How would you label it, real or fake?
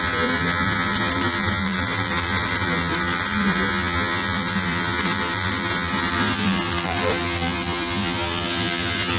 fake